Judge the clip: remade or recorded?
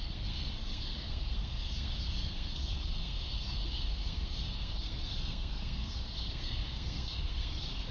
remade